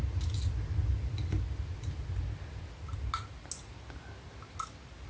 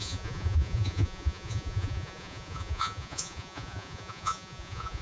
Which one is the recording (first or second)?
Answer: first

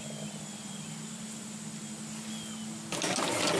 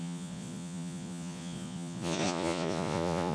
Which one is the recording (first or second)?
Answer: first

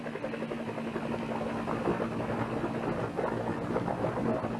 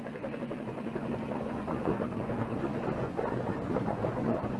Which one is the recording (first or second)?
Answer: first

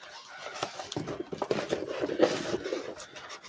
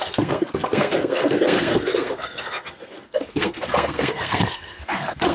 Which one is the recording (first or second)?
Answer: first